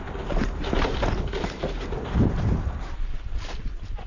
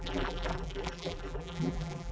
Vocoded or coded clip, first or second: second